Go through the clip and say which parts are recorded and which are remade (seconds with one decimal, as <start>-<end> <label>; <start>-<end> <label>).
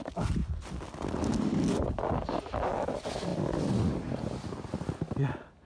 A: 0.0-5.6 recorded